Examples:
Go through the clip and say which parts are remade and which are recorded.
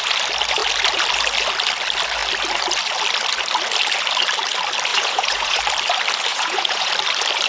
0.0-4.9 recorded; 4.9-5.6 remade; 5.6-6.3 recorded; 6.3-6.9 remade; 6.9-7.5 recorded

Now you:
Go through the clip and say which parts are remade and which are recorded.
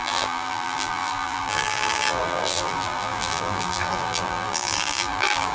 0.0-5.5 remade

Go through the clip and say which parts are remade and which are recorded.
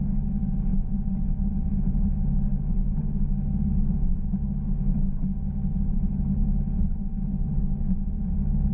0.0-8.7 recorded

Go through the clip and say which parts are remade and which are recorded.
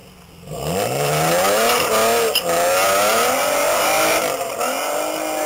0.0-5.5 recorded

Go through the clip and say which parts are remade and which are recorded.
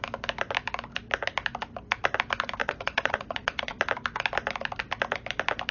0.0-2.6 recorded; 2.6-3.8 remade; 3.8-5.7 recorded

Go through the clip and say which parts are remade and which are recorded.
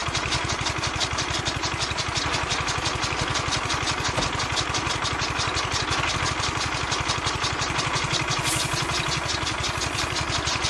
0.0-0.5 remade; 0.5-10.7 recorded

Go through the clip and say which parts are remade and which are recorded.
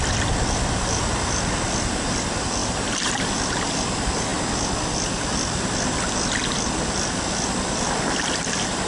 0.0-8.9 recorded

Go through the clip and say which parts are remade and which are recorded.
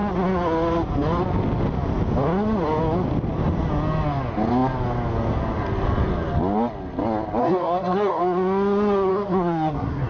0.0-7.4 recorded; 7.4-8.2 remade; 8.2-9.1 recorded; 9.1-10.1 remade